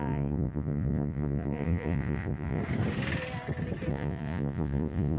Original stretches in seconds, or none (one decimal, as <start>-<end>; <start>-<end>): 2.6-3.9